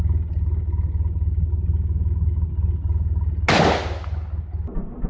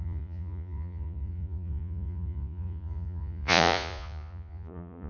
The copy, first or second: second